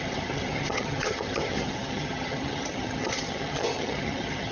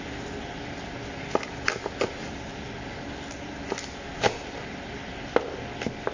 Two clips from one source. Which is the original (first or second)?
second